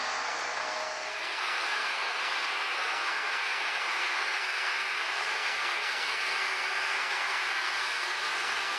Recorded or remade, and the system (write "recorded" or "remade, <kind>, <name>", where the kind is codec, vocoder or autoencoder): remade, codec, SNAC